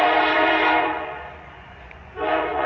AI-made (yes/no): yes